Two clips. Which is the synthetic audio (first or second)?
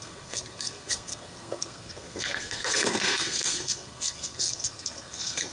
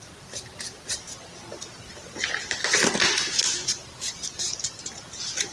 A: first